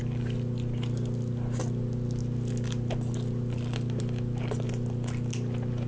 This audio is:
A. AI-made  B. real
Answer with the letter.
B